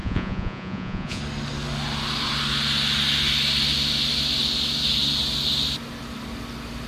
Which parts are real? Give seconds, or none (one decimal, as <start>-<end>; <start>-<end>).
1.2-6.9